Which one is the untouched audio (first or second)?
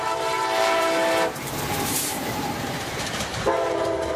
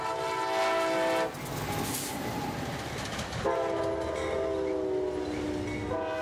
second